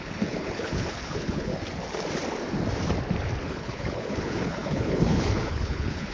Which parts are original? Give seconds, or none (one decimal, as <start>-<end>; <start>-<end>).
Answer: 1.5-3.4